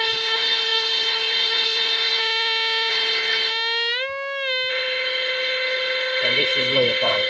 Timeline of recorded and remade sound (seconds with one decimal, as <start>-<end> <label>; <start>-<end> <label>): 0.0-2.2 remade; 2.2-2.9 recorded; 2.9-3.5 remade; 3.5-4.7 recorded; 4.7-7.3 remade